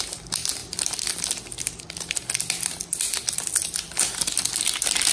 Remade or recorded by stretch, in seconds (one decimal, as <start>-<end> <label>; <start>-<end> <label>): 0.0-0.6 recorded; 0.6-1.3 remade; 1.3-5.1 recorded